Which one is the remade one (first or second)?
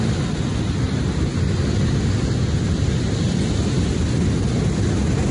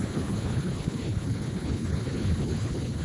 second